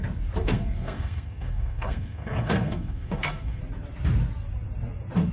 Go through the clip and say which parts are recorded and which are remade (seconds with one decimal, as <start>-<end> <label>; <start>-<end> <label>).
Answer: 0.0-0.4 recorded; 0.4-3.6 remade; 3.6-5.3 recorded